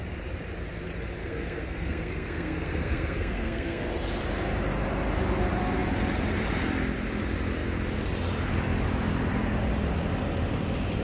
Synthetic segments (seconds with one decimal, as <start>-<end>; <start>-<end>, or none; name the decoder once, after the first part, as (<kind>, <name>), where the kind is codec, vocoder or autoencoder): 1.2-3.9 (codec, SNAC)